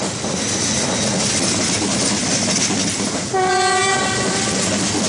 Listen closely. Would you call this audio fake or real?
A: real